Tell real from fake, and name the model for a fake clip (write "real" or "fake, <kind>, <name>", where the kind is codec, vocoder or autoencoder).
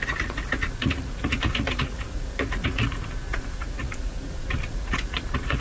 fake, vocoder, Vocos